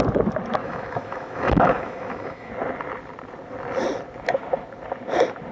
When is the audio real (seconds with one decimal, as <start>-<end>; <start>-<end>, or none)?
0.0-0.6; 2.5-5.5